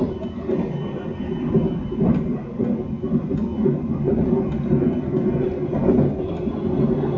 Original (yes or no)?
yes